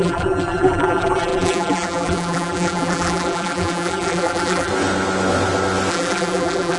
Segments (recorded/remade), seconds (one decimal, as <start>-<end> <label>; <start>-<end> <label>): 0.0-4.7 remade; 4.7-5.9 recorded; 5.9-6.8 remade